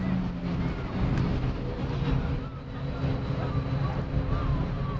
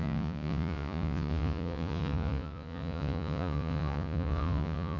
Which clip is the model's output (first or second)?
second